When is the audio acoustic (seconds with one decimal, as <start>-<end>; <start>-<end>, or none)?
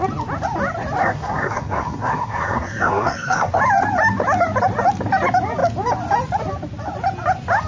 0.0-1.0; 3.6-7.7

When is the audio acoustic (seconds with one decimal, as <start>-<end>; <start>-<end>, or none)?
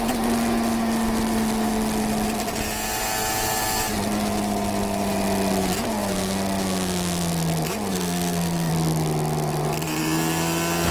0.0-7.9; 8.7-10.9